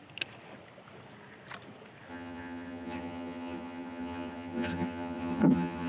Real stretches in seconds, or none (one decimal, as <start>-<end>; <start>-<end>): 0.0-2.1